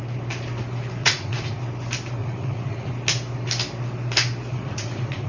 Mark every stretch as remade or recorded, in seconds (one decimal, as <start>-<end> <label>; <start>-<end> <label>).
0.0-1.0 recorded; 1.0-1.6 remade; 1.6-2.2 recorded; 2.2-2.9 remade; 2.9-4.5 recorded; 4.5-5.3 remade